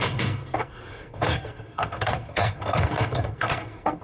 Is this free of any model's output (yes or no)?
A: no